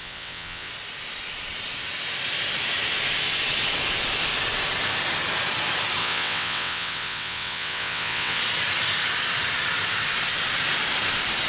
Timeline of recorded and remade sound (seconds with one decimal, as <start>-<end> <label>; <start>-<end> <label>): 0.0-0.7 remade; 0.7-6.0 recorded; 6.0-8.4 remade; 8.4-11.5 recorded